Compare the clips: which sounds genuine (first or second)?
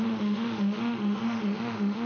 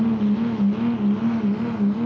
second